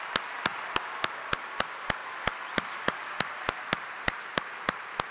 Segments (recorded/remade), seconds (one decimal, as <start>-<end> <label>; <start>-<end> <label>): 0.0-0.5 recorded; 0.5-1.4 remade; 1.4-2.0 recorded; 2.0-5.1 remade